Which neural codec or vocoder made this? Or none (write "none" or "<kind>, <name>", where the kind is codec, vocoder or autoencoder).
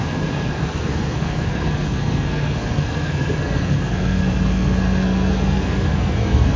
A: codec, SNAC